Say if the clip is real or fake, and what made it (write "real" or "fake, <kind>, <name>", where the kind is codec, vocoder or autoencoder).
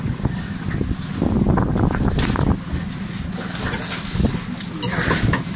real